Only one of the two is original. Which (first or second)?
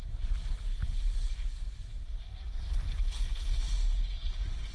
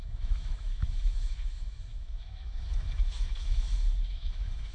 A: first